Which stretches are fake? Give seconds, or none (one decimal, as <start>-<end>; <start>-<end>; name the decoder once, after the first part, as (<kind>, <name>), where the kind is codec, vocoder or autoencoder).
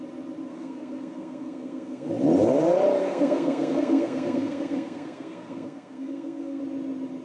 0.5-2.1 (codec, SNAC); 3.0-6.6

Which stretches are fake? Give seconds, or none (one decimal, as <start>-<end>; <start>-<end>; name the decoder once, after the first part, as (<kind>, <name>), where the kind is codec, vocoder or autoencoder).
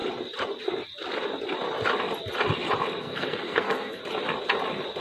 3.0-4.0 (codec, SNAC)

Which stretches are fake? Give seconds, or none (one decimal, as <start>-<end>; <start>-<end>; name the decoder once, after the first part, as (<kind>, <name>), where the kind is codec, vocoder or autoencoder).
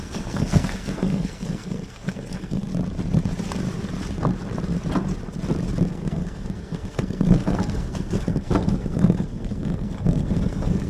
0.0-2.7 (codec, SNAC); 5.9-10.9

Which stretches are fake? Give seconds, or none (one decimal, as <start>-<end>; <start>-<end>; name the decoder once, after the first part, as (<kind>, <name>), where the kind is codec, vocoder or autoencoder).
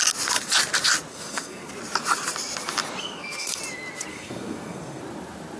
1.1-1.7 (codec, SNAC); 3.0-3.6; 4.1-5.0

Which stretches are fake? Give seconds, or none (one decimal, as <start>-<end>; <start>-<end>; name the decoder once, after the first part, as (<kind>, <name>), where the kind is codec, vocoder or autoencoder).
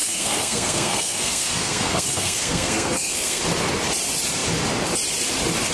0.0-3.4 (codec, SNAC)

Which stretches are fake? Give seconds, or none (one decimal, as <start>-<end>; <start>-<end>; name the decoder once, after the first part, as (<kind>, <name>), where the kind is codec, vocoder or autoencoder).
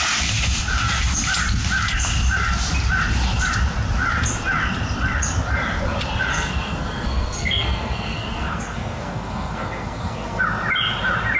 6.3-10.4 (codec, SNAC)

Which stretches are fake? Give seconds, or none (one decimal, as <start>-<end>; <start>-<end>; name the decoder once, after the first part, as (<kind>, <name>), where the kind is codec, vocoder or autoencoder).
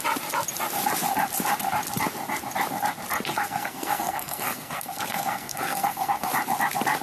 3.3-6.3 (codec, SNAC)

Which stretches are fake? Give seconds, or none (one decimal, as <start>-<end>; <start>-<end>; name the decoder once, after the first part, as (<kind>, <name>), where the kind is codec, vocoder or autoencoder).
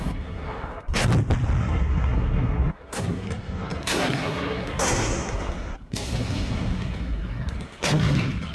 0.0-1.1 (codec, SNAC); 1.6-8.5